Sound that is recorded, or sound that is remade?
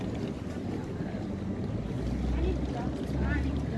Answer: recorded